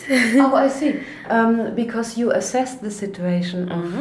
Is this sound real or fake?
real